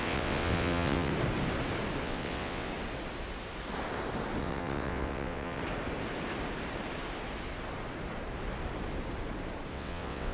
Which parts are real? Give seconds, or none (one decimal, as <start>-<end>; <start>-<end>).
1.1-2.0; 2.7-4.4; 5.6-9.7